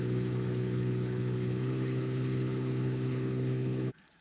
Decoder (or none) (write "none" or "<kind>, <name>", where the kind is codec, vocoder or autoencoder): codec, HILCodec